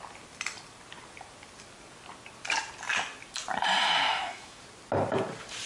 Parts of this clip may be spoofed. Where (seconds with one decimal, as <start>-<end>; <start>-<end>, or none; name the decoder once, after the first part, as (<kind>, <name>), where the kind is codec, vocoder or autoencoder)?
4.1-4.6 (autoencoder, DAC-VAE)

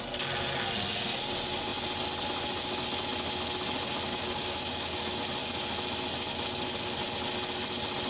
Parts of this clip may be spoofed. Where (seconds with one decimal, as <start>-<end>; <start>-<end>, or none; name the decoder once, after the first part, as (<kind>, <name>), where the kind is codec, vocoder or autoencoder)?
4.1-4.9 (codec, DAC)

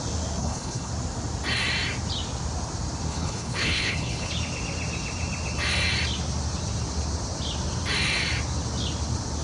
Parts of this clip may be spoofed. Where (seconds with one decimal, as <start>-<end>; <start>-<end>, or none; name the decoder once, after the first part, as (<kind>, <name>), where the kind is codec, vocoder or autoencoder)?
0.4-0.9 (codec, HILCodec); 3.1-4.3

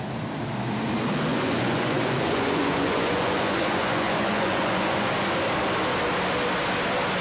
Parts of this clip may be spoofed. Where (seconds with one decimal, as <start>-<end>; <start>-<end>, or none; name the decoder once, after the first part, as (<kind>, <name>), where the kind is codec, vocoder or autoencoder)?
1.3-5.1 (vocoder, Vocos)

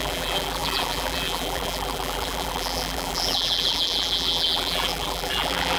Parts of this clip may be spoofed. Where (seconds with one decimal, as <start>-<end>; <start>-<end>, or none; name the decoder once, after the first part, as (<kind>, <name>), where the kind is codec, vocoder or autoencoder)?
0.0-5.8 (vocoder, BigVGAN v2)

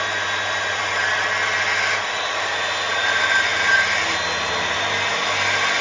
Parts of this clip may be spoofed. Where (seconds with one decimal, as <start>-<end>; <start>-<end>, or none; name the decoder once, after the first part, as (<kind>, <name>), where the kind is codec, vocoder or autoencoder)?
0.0-3.5 (vocoder, BigVGAN v2); 4.5-5.8